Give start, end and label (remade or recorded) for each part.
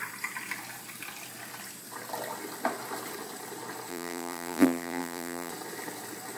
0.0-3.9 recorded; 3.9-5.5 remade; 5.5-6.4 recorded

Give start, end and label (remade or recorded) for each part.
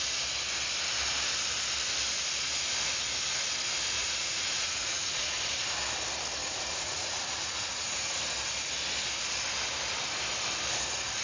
0.0-4.0 recorded; 4.0-5.4 remade; 5.4-6.4 recorded; 6.4-8.2 remade; 8.2-11.2 recorded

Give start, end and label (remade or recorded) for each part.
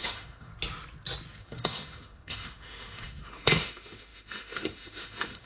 0.0-0.5 remade; 0.5-1.4 recorded; 1.4-5.5 remade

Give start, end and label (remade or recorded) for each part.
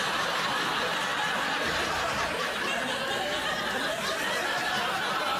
0.0-5.4 recorded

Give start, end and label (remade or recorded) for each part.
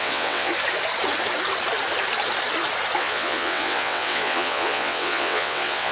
0.0-0.5 remade; 0.5-3.0 recorded; 3.0-5.9 remade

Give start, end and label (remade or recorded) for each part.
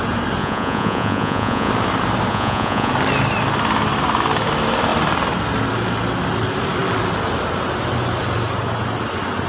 0.0-0.4 recorded; 0.4-1.7 remade; 1.7-2.3 recorded; 2.3-2.9 remade; 2.9-9.5 recorded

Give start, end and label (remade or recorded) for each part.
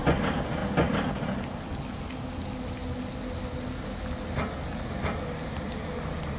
0.0-6.4 recorded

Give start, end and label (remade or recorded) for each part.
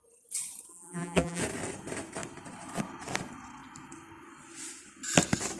0.0-0.7 recorded; 0.7-1.4 remade; 1.4-5.6 recorded